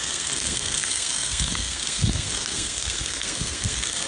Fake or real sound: fake